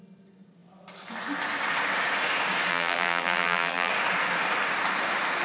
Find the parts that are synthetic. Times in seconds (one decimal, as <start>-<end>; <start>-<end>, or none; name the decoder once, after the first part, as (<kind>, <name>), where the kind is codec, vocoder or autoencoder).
2.7-3.9 (vocoder, BigVGAN v2)